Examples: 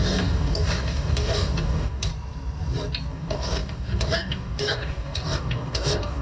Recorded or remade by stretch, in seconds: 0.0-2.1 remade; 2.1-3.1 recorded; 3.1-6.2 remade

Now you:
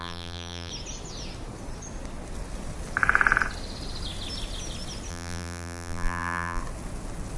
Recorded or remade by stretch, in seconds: 0.0-0.7 remade; 0.7-5.1 recorded; 5.1-6.6 remade; 6.6-7.4 recorded

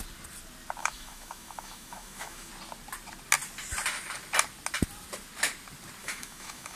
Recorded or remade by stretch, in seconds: 0.0-0.8 recorded; 0.8-2.5 remade; 2.5-6.0 recorded; 6.0-6.8 remade

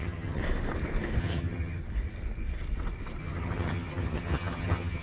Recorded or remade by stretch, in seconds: 0.0-0.4 remade; 0.4-1.2 recorded; 1.2-1.8 remade; 1.8-3.2 recorded; 3.2-5.0 remade

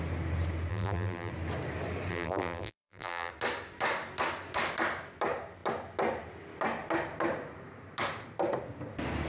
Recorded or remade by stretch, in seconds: 0.0-0.7 recorded; 0.7-1.3 remade; 1.3-2.1 recorded; 2.1-3.3 remade; 3.3-9.3 recorded